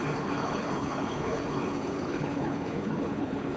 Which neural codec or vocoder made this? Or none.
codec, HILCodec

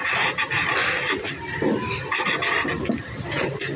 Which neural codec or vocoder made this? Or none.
none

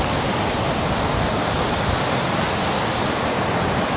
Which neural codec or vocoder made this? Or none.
none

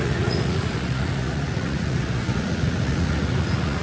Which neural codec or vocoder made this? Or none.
vocoder, Vocos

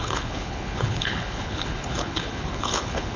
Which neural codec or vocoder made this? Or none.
codec, HILCodec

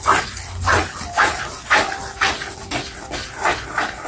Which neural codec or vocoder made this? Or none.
none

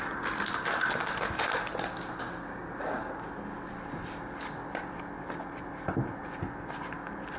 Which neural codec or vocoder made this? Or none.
none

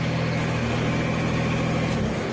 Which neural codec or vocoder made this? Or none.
none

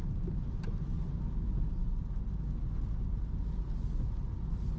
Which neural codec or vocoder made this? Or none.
none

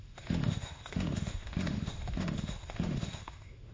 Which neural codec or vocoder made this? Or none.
autoencoder, DAC-VAE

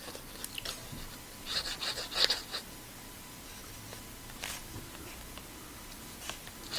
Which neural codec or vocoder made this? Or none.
none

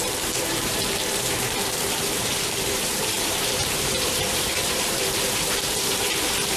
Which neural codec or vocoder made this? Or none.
vocoder, BigVGAN v2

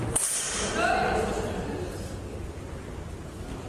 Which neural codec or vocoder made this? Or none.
none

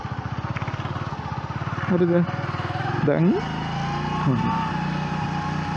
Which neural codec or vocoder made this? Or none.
none